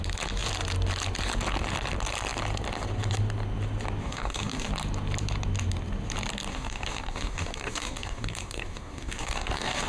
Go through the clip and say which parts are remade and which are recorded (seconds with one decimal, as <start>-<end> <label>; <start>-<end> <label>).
0.0-4.0 recorded; 4.0-4.7 remade; 4.7-6.5 recorded; 6.5-9.9 remade